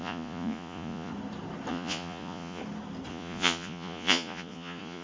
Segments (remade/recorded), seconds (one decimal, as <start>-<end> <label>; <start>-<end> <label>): 0.0-1.1 remade; 1.1-1.7 recorded; 1.7-2.6 remade; 2.6-3.1 recorded; 3.1-5.0 remade